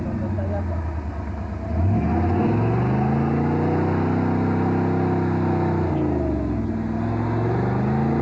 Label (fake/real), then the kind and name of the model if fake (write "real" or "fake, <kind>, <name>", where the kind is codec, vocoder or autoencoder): real